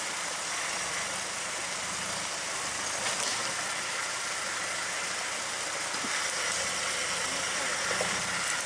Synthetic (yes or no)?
no